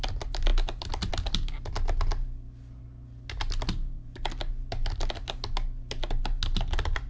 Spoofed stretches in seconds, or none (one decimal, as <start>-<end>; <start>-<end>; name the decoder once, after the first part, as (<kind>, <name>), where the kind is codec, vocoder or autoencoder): none